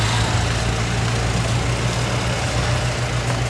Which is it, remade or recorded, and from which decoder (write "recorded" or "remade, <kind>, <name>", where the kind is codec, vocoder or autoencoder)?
recorded